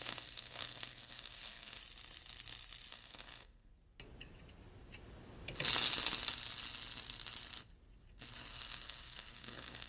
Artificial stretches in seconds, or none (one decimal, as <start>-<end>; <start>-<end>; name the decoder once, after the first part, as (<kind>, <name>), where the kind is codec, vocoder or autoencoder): 0.0-1.8 (codec, SNAC); 2.9-3.7; 8.5-9.9